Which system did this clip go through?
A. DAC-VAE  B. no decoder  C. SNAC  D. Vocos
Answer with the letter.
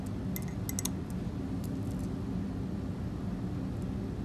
B